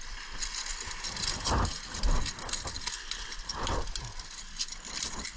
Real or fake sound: real